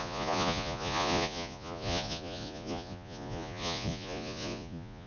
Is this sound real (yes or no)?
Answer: no